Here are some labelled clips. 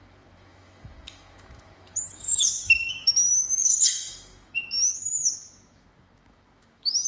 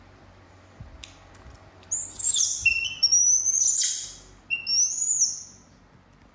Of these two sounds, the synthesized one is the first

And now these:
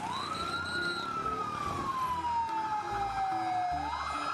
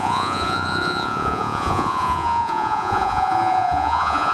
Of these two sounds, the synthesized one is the second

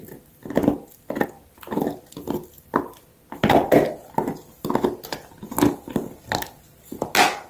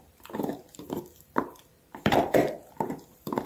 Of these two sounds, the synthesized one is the second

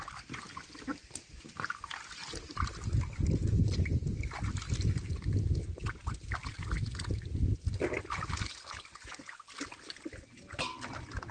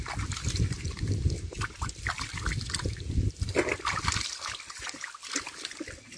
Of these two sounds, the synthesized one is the second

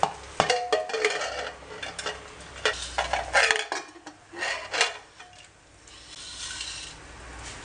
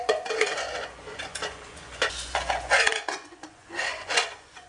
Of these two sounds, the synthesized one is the second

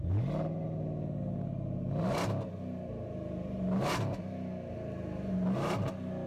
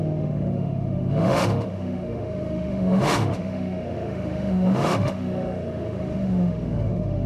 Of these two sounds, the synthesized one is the second